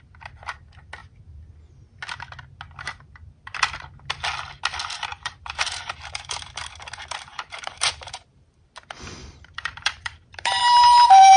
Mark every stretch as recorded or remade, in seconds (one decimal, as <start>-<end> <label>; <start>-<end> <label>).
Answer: 0.0-5.1 recorded; 5.1-6.5 remade; 6.5-7.3 recorded; 7.3-8.6 remade; 8.6-9.2 recorded; 9.2-10.6 remade; 10.6-11.4 recorded